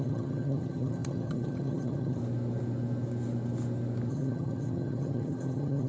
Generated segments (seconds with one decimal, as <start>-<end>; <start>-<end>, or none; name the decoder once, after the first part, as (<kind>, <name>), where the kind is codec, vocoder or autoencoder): 0.0-2.2 (vocoder, HiFi-GAN); 4.1-5.9